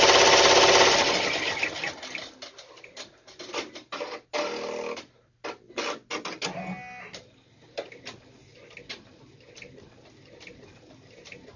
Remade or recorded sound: recorded